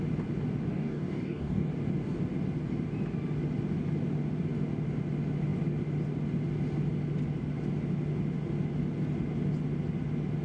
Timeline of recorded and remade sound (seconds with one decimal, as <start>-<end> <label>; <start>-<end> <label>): 0.0-0.7 recorded; 0.7-1.7 remade; 1.7-10.4 recorded